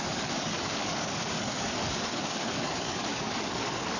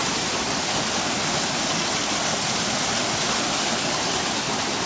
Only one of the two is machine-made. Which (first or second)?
first